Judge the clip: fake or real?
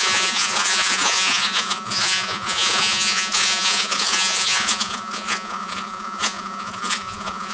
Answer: fake